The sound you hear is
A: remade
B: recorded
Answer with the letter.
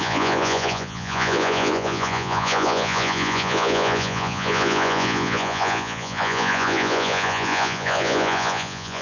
A